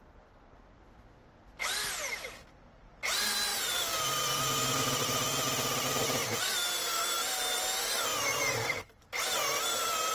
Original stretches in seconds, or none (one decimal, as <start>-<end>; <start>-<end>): 0.0-3.5; 5.0-8.1; 9.4-10.1